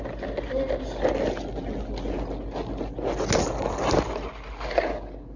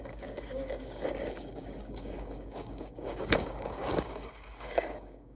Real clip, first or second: first